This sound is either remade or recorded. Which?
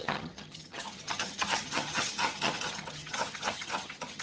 remade